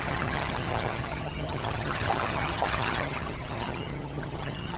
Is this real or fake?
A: fake